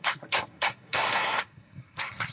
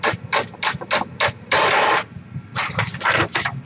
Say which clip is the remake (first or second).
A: first